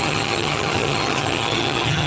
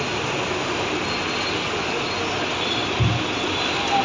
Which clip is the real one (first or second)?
second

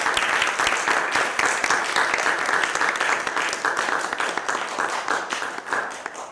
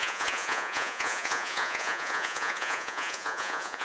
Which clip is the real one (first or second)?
first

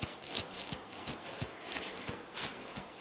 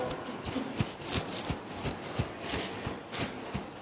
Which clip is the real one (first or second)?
second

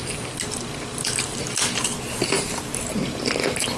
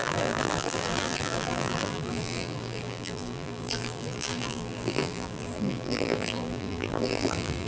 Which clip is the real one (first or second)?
first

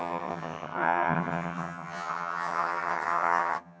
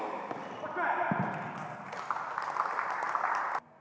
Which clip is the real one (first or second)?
second